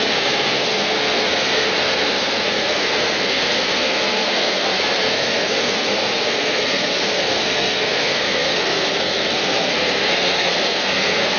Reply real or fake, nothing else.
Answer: fake